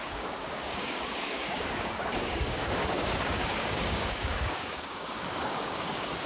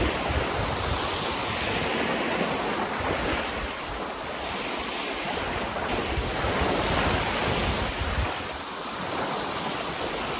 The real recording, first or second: second